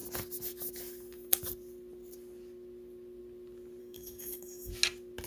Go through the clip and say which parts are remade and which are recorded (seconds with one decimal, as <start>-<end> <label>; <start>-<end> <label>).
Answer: 0.0-3.8 recorded; 3.8-4.7 remade; 4.7-5.3 recorded